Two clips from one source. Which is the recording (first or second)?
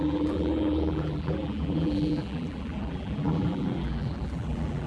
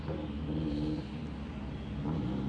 second